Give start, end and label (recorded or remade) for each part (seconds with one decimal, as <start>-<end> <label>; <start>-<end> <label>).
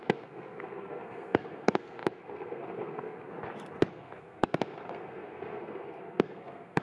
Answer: 0.0-3.3 remade; 3.3-3.9 recorded; 3.9-6.8 remade